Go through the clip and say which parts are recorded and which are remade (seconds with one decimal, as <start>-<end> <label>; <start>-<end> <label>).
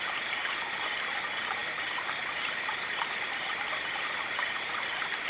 0.0-5.3 recorded